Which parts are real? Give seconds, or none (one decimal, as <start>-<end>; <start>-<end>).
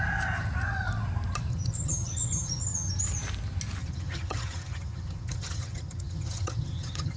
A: 0.0-1.5; 2.9-3.8